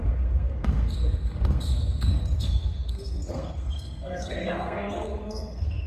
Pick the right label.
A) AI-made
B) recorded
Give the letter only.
A